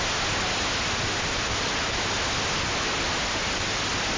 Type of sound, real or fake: real